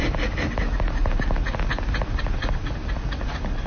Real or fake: real